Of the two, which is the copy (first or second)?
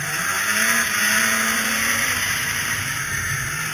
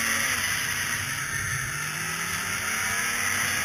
first